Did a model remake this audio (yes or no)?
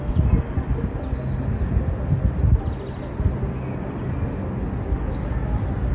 no